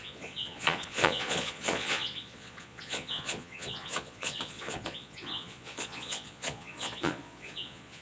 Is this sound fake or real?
fake